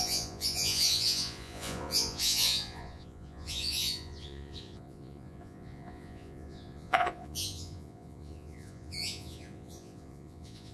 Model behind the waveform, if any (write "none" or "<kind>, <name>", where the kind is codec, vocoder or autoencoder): vocoder, Vocos